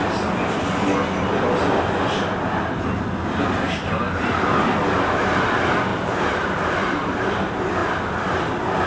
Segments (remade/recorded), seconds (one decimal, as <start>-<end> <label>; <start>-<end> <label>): 0.0-5.9 recorded; 5.9-7.3 remade; 7.3-8.9 recorded